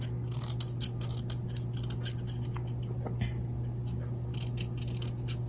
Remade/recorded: recorded